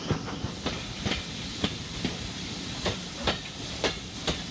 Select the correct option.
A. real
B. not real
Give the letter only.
A